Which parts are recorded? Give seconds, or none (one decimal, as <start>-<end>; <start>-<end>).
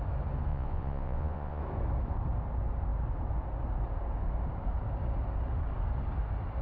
0.0-0.5; 1.6-6.6